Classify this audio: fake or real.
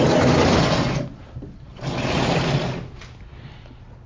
real